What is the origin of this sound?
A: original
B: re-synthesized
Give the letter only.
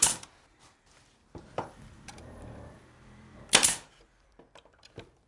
B